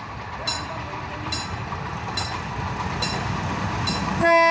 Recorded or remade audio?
recorded